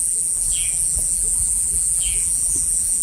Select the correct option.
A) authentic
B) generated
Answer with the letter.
B